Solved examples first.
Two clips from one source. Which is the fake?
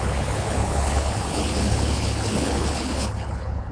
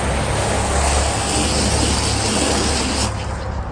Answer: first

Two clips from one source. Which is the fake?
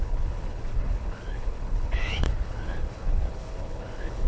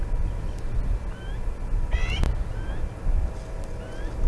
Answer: first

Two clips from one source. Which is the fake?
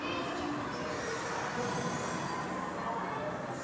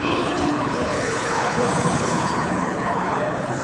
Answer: second